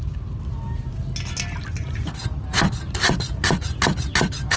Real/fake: real